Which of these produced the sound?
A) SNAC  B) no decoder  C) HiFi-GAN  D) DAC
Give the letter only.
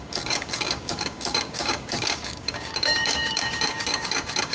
D